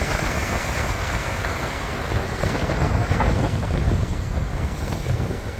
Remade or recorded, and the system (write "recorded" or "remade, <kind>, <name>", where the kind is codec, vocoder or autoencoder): remade, codec, SNAC